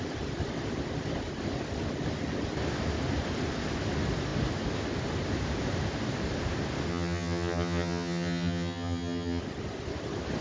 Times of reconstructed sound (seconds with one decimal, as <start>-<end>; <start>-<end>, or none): 6.9-9.4